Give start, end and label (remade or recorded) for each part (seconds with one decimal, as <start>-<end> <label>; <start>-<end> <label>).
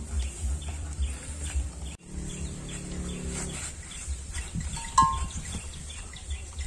0.0-0.7 recorded; 0.7-4.7 remade; 4.7-6.7 recorded